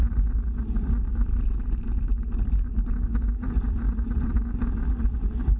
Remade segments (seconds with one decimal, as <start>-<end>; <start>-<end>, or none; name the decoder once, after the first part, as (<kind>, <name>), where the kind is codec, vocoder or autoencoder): none

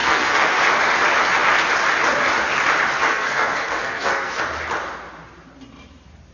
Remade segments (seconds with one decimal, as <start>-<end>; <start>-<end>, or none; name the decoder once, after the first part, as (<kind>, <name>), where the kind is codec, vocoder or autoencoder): 0.0-0.6 (codec, SNAC); 3.1-4.4

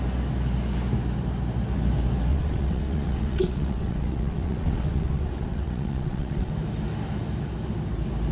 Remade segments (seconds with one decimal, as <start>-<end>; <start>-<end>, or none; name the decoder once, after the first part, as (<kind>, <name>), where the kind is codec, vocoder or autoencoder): 2.3-6.5 (vocoder, WaveNeXt)

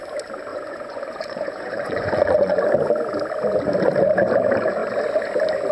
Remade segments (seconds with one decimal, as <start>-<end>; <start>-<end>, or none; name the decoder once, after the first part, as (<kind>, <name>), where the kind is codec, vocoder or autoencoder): 0.5-2.6 (vocoder, Vocos)

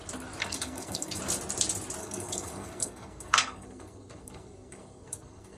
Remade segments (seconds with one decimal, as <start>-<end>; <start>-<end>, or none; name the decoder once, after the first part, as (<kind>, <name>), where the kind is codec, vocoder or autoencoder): 0.4-1.2 (codec, SNAC); 2.0-5.6

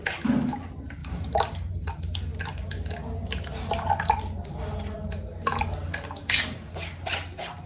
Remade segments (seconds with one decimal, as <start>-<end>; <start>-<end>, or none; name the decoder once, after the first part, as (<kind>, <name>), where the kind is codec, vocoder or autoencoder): 1.0-1.9 (vocoder, BigVGAN v2)